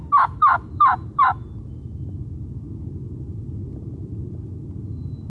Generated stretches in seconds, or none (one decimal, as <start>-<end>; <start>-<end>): none